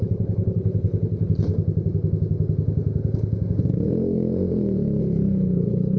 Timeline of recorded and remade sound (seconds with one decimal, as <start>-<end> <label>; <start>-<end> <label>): 0.0-1.5 remade; 1.5-5.0 recorded; 5.0-6.0 remade